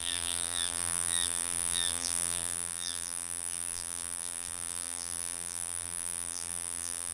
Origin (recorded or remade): remade